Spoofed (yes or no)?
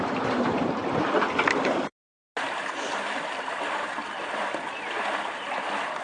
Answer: no